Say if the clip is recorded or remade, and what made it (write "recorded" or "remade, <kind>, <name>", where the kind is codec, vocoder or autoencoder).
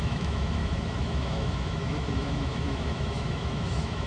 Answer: remade, autoencoder, DAC-VAE